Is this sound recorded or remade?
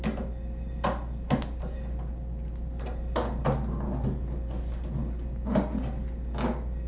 recorded